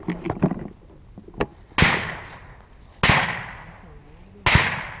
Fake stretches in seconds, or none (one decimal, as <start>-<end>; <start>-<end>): none